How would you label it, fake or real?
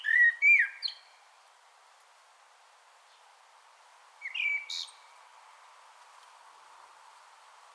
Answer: fake